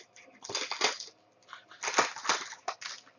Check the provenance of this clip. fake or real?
real